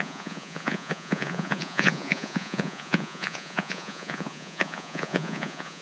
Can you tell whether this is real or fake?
fake